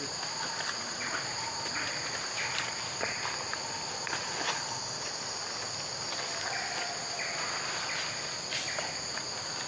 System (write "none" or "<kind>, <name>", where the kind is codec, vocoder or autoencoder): none